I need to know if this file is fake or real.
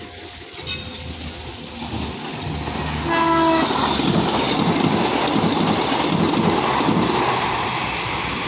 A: real